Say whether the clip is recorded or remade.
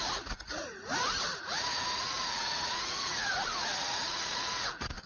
remade